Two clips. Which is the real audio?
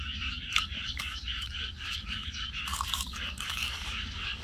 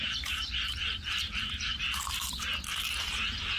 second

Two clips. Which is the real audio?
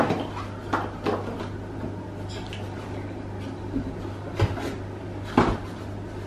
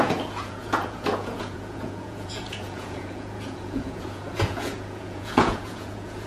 first